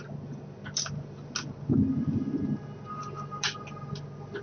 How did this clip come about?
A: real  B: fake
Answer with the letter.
A